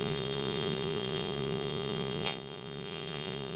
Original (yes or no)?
no